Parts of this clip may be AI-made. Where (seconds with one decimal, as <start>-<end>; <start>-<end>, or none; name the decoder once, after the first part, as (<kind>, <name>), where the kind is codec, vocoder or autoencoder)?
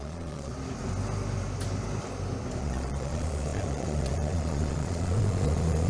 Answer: 0.0-0.5 (vocoder, Vocos); 2.6-5.9